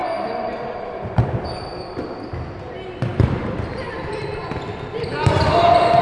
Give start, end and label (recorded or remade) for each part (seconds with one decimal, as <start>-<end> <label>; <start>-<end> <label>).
0.0-3.1 recorded; 3.1-4.4 remade; 4.4-6.0 recorded